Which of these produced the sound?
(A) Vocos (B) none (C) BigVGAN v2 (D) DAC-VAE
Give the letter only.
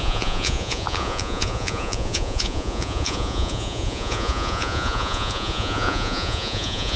A